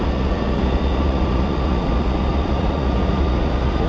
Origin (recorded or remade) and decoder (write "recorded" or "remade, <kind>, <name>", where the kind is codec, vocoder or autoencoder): remade, vocoder, Vocos